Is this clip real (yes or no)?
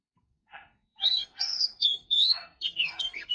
no